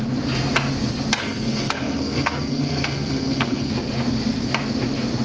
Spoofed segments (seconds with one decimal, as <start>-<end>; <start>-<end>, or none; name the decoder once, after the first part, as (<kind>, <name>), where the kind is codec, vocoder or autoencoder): 1.2-3.7 (codec, SNAC)